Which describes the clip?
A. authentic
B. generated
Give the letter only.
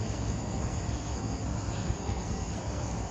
B